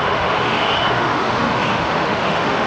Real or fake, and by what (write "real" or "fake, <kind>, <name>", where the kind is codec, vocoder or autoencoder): fake, autoencoder, DAC-VAE